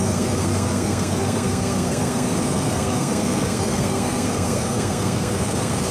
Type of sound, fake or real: fake